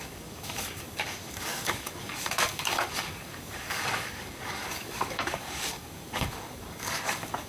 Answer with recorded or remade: remade